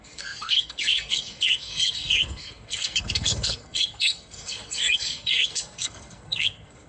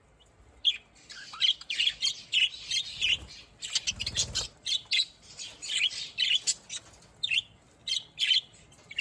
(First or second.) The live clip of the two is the second